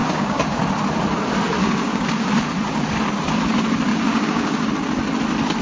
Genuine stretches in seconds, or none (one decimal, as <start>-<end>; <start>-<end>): 0.6-1.6; 2.3-3.9; 4.7-5.6